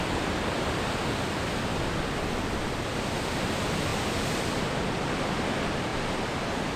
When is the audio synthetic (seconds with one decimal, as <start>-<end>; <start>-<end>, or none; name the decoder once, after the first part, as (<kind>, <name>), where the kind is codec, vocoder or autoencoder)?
0.0-1.7 (vocoder, BigVGAN v2); 2.7-5.9